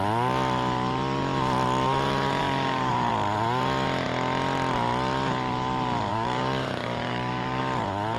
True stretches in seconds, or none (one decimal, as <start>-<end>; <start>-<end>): 0.0-2.4; 3.1-6.1; 7.6-8.2